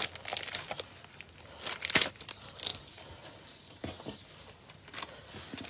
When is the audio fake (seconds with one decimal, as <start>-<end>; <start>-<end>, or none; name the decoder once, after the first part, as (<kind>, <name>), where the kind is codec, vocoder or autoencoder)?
none